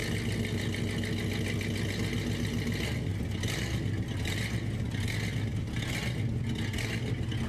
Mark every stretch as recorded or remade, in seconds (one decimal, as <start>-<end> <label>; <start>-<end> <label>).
0.0-7.5 recorded